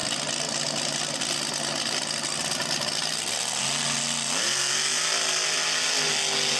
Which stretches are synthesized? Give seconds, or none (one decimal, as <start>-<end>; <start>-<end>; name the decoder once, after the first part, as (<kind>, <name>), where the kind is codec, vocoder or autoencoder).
none